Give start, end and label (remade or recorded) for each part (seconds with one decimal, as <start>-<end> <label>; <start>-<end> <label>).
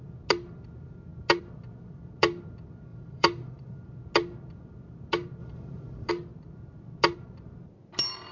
0.0-2.9 recorded; 2.9-3.8 remade; 3.8-5.4 recorded; 5.4-6.1 remade; 6.1-8.3 recorded